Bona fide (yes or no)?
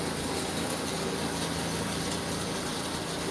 yes